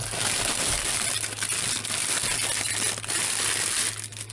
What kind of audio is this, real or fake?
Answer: real